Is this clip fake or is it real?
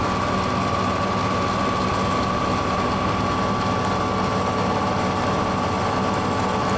real